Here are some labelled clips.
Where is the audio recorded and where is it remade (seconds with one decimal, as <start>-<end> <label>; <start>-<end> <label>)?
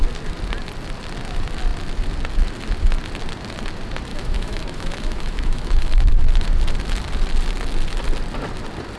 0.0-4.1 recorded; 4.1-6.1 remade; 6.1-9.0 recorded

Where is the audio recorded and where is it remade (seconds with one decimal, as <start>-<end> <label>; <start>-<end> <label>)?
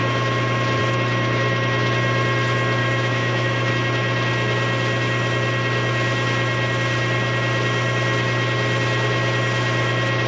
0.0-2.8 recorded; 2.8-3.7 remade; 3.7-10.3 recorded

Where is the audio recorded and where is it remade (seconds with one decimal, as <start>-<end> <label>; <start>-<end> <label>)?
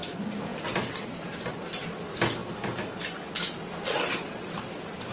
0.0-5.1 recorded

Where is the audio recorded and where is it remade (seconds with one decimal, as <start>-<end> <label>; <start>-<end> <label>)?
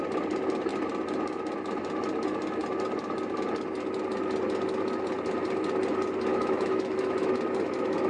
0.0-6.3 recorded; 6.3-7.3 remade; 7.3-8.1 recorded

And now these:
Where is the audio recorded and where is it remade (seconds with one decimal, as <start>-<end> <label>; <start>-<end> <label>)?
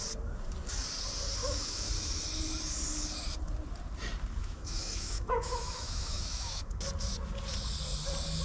0.0-1.4 recorded; 1.4-1.9 remade; 1.9-4.4 recorded; 4.4-6.8 remade; 6.8-8.4 recorded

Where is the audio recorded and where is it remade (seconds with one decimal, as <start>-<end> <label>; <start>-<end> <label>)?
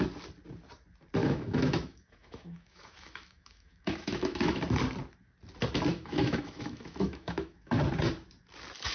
0.0-1.2 recorded; 1.2-4.6 remade; 4.6-5.9 recorded; 5.9-7.7 remade; 7.7-8.9 recorded